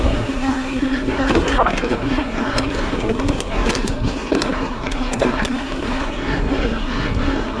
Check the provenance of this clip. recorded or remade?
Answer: remade